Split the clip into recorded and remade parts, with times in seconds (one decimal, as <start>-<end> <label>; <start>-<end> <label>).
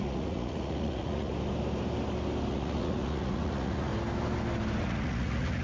0.0-1.3 remade; 1.3-2.5 recorded; 2.5-3.9 remade; 3.9-4.8 recorded; 4.8-5.6 remade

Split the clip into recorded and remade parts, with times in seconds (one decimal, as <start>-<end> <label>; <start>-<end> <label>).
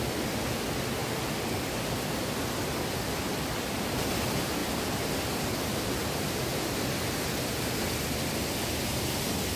0.0-1.0 recorded; 1.0-1.6 remade; 1.6-9.6 recorded